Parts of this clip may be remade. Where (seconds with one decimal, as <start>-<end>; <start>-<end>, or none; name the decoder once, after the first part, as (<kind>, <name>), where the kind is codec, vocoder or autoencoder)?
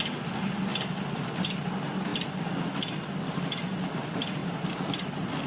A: 0.7-1.6 (vocoder, BigVGAN v2); 2.1-2.7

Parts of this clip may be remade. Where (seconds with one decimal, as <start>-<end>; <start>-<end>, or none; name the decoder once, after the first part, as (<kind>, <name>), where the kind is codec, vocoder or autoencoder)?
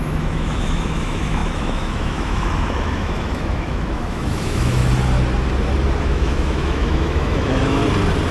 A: 0.0-4.8 (autoencoder, DAC-VAE); 6.0-7.8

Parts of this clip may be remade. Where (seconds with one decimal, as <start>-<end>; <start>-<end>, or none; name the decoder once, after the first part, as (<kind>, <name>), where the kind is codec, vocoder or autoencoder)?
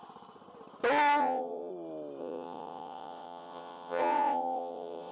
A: 1.2-1.7 (vocoder, WaveNeXt); 2.2-5.1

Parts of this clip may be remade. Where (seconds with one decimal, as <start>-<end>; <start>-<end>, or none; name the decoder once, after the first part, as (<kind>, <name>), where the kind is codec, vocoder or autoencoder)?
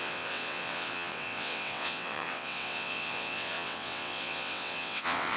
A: 0.0-5.4 (vocoder, WaveNeXt)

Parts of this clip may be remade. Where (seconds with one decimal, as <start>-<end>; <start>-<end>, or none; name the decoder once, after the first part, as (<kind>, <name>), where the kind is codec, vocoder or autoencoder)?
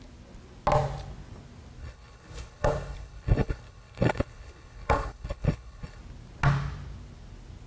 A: 1.8-6.0 (codec, HILCodec)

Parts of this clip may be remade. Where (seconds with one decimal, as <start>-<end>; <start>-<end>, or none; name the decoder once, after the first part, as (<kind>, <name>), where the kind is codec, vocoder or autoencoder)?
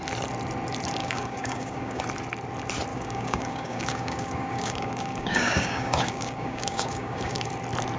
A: 1.0-2.0 (codec, DAC); 2.9-7.5